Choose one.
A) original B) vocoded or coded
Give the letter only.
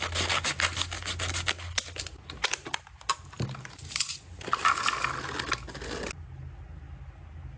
A